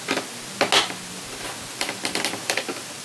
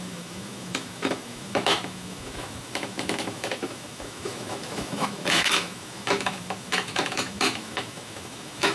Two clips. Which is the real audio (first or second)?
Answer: first